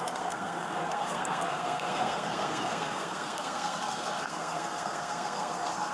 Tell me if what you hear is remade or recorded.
remade